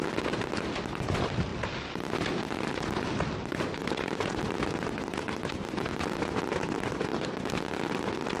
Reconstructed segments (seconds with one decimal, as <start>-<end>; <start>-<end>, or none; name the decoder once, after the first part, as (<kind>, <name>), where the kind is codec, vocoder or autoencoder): none